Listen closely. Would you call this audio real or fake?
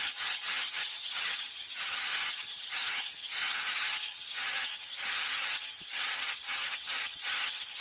fake